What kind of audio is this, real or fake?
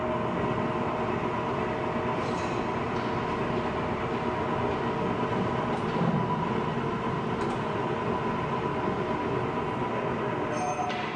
real